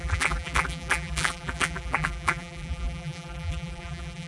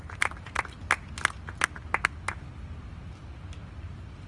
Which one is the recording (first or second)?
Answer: second